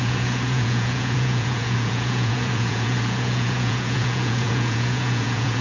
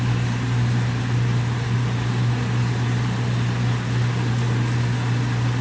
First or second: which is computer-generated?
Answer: first